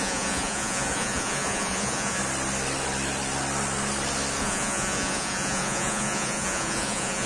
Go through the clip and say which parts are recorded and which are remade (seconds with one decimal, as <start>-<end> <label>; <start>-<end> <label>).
0.0-2.2 remade; 2.2-4.4 recorded; 4.4-7.3 remade